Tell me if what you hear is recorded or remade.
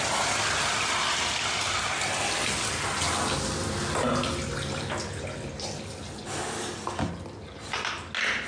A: recorded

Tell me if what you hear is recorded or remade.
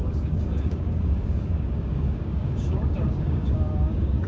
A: remade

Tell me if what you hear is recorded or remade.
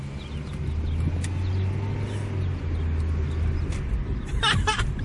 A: recorded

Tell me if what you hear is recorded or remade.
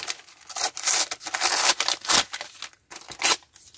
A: recorded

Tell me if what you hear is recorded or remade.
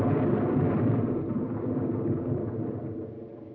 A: recorded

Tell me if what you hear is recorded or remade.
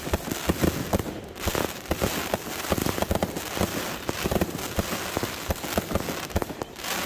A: recorded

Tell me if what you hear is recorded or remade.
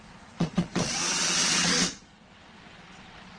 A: remade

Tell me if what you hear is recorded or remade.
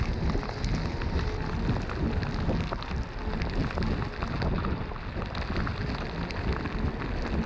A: recorded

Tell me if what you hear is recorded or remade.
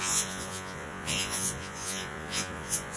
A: remade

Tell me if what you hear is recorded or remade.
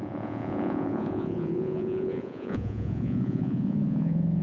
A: remade